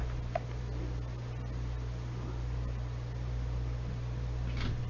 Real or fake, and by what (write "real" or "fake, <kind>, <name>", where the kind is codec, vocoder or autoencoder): real